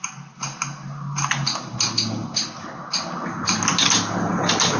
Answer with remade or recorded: recorded